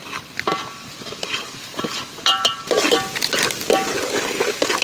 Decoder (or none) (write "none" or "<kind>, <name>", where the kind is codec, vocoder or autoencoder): none